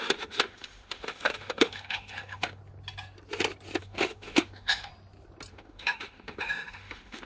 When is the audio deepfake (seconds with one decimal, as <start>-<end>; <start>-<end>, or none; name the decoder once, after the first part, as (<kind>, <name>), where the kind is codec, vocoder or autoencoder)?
0.0-2.6 (autoencoder, DAC-VAE); 3.8-4.9; 5.5-7.3